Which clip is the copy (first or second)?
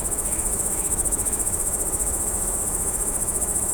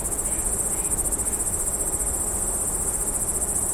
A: first